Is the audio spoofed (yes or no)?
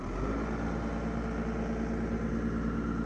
no